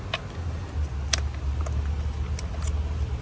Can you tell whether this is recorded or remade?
recorded